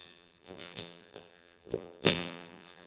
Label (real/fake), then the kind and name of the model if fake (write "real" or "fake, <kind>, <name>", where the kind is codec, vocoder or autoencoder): fake, vocoder, BigVGAN v2